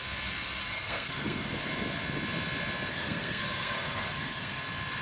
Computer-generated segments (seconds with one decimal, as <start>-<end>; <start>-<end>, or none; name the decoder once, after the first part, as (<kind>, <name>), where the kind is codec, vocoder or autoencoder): 0.6-1.5 (codec, SNAC); 2.9-4.6